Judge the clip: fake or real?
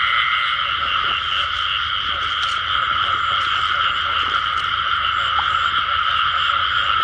real